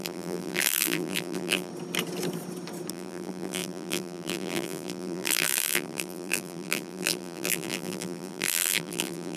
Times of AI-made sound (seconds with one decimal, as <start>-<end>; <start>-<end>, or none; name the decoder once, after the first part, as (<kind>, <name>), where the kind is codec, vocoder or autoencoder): 0.0-1.7 (vocoder, BigVGAN v2); 2.9-9.4